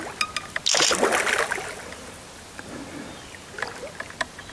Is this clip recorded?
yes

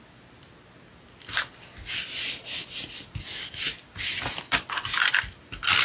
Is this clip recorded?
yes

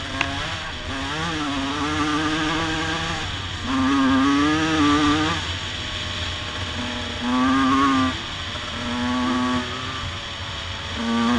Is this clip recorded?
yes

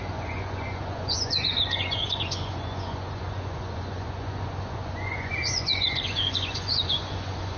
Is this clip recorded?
no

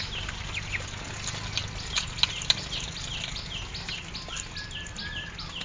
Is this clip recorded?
yes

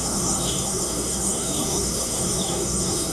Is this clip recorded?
no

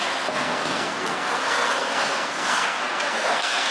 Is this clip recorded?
no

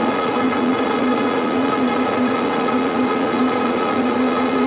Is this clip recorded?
no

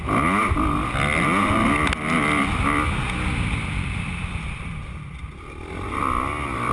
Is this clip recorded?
yes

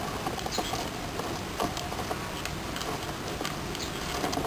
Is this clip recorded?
yes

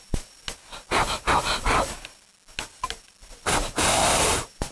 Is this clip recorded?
yes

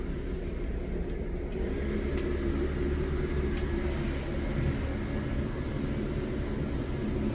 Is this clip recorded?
yes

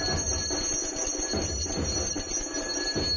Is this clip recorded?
yes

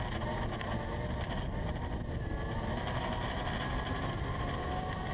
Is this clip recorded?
yes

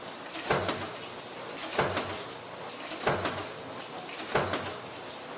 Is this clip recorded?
yes